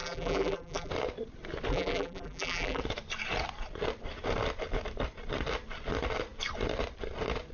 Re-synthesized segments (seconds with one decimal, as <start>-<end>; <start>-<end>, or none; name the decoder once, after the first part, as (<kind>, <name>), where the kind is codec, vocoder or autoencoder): 0.0-0.9 (vocoder, BigVGAN v2); 1.7-2.8